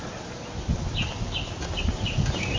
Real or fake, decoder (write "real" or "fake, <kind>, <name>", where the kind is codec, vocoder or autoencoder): real